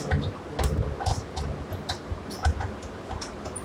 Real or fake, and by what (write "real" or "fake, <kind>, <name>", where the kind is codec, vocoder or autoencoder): real